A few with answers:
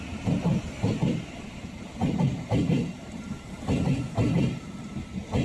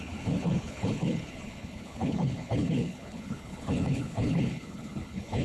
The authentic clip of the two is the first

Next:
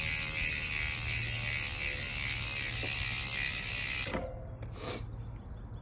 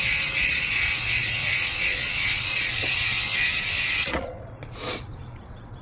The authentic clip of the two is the first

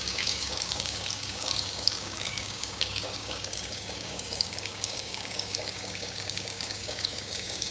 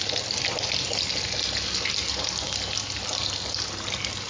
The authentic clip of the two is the second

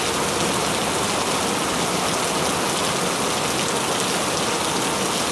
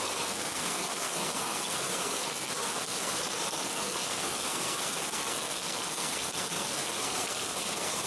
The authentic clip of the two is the first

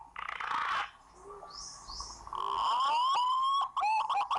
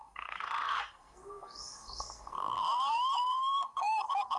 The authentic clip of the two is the first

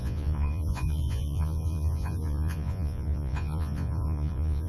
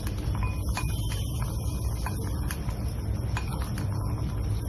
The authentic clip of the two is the second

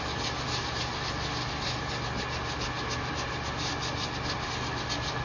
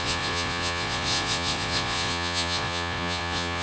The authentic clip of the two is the first